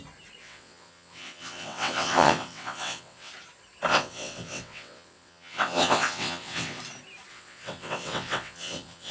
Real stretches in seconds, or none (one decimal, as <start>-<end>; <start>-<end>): 0.0-0.4; 3.3-3.9; 6.8-7.3